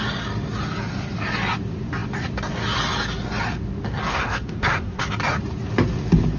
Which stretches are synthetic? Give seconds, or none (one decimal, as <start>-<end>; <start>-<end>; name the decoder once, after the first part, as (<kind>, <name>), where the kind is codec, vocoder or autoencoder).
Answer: 4.1-5.0 (codec, SNAC)